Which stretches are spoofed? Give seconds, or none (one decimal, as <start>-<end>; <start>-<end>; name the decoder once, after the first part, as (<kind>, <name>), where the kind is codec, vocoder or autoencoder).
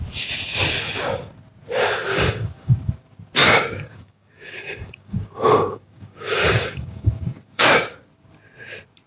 2.1-2.7 (codec, DAC); 3.4-7.9